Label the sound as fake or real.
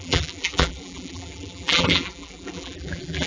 fake